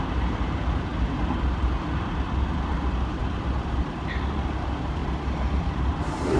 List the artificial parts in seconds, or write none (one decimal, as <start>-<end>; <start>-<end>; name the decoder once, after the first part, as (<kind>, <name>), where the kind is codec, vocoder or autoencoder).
0.0-0.9 (vocoder, BigVGAN v2); 2.7-3.2; 3.7-5.0; 5.6-6.4